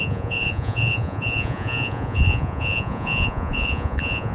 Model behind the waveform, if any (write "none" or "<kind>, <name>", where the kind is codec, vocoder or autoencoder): vocoder, Vocos